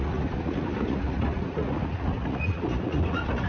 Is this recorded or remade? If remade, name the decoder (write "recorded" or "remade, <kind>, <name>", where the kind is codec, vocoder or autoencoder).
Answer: remade, vocoder, Vocos